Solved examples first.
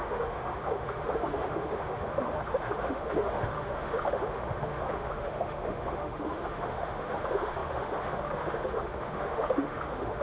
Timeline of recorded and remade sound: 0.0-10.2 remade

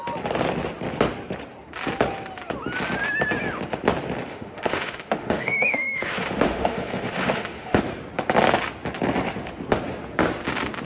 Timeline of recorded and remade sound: 0.0-4.3 recorded; 4.3-7.8 remade; 7.8-10.8 recorded